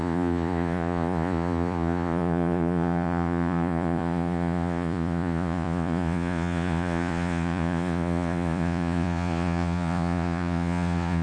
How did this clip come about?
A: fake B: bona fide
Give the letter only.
A